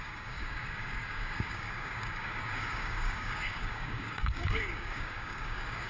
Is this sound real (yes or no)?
no